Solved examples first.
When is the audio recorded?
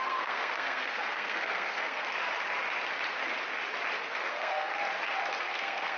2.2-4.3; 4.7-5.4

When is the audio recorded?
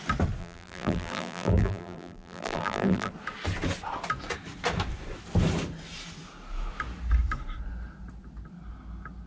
0.0-0.4; 3.1-9.3